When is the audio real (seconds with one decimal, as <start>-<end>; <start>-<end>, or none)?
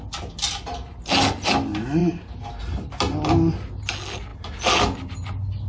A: 0.0-5.7